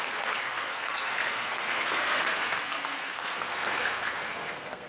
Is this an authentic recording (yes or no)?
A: no